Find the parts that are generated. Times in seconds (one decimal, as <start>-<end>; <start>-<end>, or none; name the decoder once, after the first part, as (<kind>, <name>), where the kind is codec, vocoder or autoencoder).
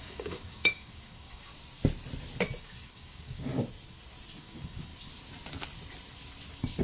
0.0-1.5 (codec, DAC); 2.6-3.5; 4.4-4.9